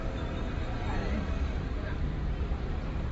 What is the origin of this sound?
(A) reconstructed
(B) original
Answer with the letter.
B